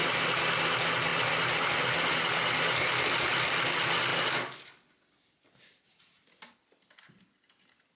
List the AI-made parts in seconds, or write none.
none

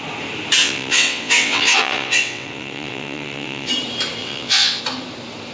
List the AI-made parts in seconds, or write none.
0.6-3.7 (vocoder, WaveNeXt); 4.2-4.8

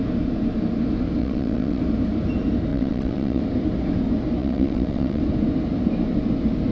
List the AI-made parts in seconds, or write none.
1.2-1.8 (vocoder, WaveNeXt); 2.7-3.4; 4.4-5.2

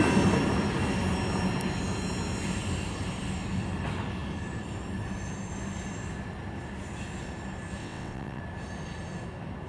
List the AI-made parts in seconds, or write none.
7.8-8.4 (vocoder, WaveNeXt)

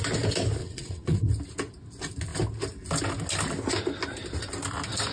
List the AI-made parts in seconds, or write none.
0.6-1.3 (vocoder, WaveNeXt)